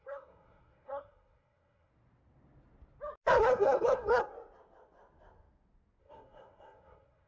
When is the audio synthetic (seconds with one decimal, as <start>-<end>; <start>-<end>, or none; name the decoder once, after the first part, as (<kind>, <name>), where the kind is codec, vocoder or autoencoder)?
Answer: 0.0-1.9 (codec, SNAC); 3.4-4.2; 6.0-7.3